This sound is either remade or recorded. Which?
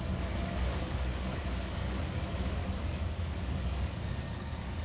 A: remade